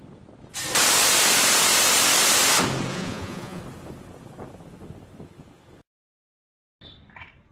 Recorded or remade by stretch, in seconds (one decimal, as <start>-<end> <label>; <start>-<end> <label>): 0.0-2.9 recorded; 2.9-3.6 remade; 3.6-7.5 recorded